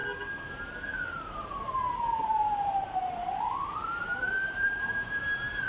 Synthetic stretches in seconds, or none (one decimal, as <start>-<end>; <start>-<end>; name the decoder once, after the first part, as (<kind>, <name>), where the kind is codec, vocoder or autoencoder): 0.5-3.2 (vocoder, BigVGAN v2); 4.3-5.7